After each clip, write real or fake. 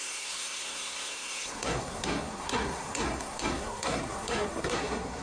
fake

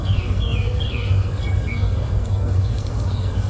fake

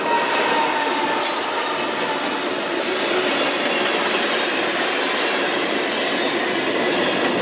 real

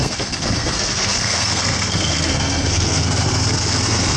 fake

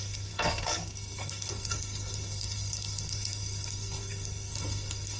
fake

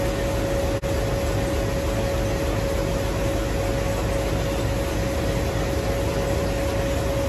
real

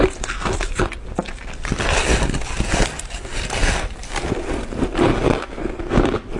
real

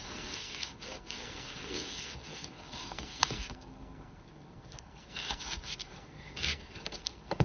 fake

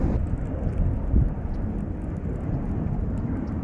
real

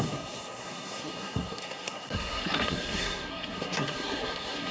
fake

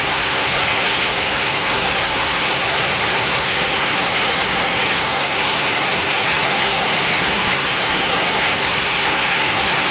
fake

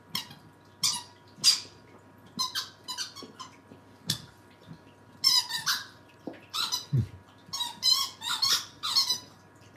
real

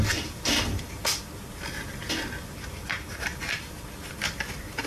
real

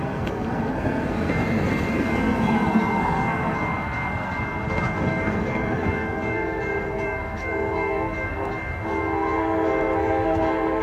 fake